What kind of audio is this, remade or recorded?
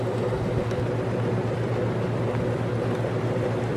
recorded